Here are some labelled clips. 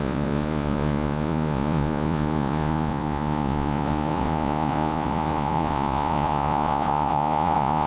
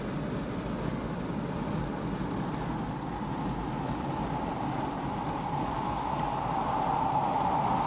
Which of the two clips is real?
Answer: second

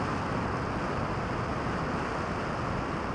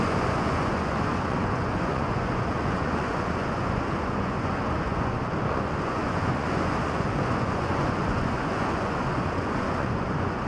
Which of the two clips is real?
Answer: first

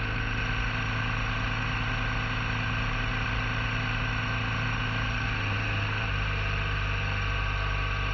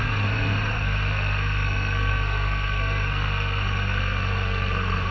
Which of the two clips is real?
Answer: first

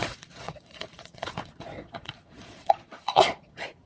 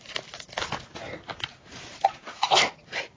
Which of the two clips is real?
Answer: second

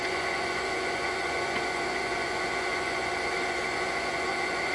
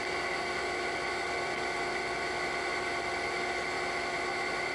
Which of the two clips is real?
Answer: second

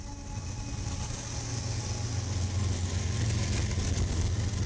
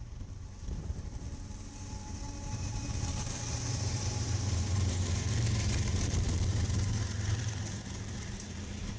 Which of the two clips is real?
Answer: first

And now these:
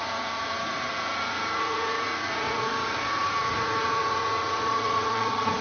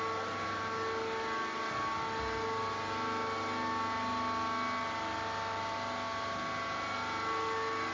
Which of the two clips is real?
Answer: second